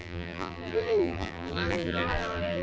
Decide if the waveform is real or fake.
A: fake